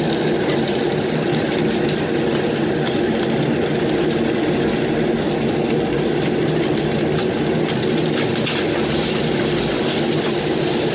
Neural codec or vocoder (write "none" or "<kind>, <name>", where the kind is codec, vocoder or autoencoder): none